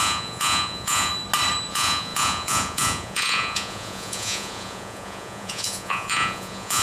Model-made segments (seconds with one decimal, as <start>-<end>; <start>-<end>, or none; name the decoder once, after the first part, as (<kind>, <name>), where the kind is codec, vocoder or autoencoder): 0.0-1.1 (vocoder, Vocos); 1.7-6.8